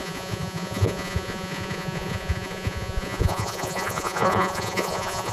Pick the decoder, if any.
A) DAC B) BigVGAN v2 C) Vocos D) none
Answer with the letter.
C